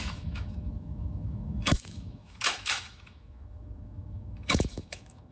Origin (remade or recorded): remade